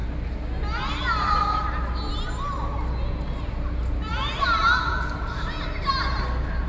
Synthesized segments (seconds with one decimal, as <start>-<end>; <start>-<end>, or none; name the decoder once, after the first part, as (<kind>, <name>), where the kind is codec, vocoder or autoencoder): none

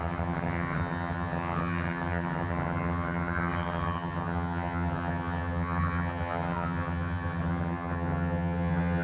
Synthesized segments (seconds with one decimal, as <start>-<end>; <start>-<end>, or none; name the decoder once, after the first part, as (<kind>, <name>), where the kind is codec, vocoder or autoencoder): 0.0-9.0 (vocoder, HiFi-GAN)

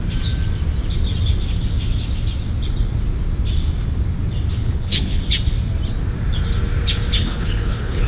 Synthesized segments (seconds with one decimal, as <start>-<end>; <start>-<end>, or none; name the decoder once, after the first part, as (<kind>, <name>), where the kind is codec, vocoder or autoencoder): 4.5-5.2 (codec, HILCodec); 7.2-8.1

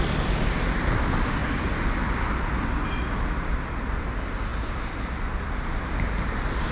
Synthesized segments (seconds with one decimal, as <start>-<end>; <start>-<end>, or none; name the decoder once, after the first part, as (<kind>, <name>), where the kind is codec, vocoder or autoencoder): none